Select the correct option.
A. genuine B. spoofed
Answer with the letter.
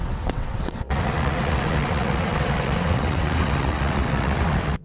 B